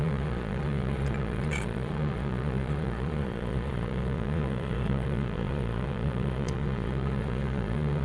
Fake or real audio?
fake